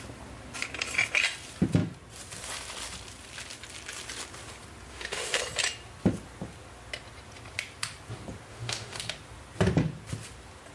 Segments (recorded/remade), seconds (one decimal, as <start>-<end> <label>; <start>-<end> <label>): 0.0-4.9 recorded; 4.9-5.4 remade; 5.4-8.5 recorded; 8.5-9.0 remade; 9.0-10.7 recorded